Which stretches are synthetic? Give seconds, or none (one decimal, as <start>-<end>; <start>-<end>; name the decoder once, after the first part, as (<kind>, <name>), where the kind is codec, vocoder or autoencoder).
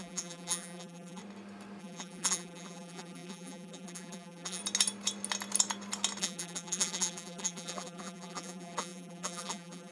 0.0-1.2 (vocoder, BigVGAN v2); 1.8-4.6; 6.2-9.9